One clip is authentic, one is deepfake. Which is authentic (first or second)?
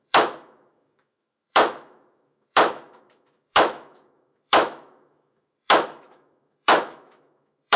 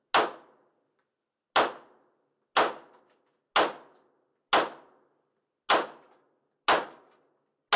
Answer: second